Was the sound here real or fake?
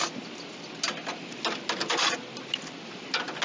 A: real